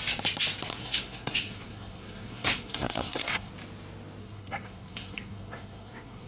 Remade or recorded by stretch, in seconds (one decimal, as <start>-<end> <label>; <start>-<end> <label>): 0.0-0.7 recorded; 0.7-3.5 remade; 3.5-4.2 recorded; 4.2-6.3 remade